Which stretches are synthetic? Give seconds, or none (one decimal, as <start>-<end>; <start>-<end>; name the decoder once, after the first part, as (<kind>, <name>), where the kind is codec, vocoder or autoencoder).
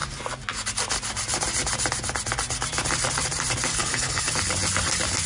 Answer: 3.7-4.3 (codec, HILCodec)